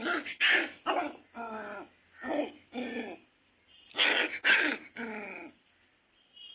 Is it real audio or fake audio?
real